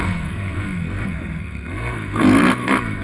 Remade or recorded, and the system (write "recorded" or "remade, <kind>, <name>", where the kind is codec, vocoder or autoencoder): remade, codec, SNAC